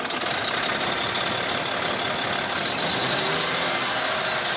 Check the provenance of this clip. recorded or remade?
recorded